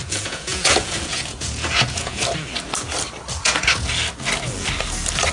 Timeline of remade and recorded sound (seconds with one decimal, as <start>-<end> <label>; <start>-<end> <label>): 0.0-2.2 remade; 2.2-3.4 recorded; 3.4-3.9 remade; 3.9-5.3 recorded